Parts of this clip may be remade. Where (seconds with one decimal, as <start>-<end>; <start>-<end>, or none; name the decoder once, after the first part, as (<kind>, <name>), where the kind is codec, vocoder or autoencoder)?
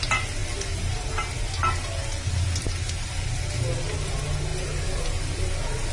none